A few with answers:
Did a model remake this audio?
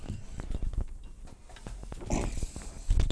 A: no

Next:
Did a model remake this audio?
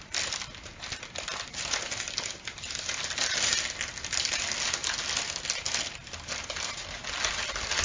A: no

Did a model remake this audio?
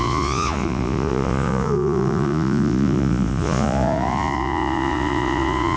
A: yes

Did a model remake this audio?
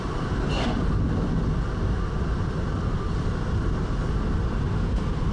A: no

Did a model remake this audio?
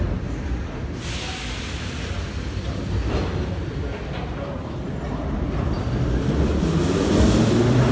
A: no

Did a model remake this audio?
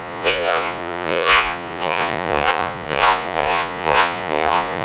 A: yes